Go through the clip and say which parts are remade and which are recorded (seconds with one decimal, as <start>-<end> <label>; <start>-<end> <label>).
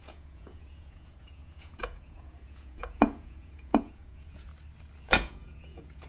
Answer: 0.0-4.5 remade; 4.5-5.0 recorded; 5.0-6.1 remade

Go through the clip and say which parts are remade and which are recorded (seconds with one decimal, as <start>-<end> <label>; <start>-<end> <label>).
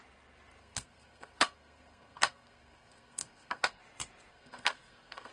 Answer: 0.0-0.6 recorded; 0.6-3.8 remade; 3.8-4.3 recorded; 4.3-5.3 remade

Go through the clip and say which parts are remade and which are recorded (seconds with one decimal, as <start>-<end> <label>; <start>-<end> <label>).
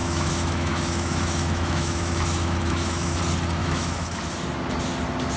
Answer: 0.0-3.2 remade; 3.2-3.6 recorded; 3.6-4.2 remade; 4.2-5.4 recorded